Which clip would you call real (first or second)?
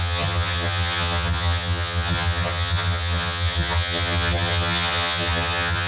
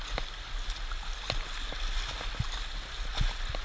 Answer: second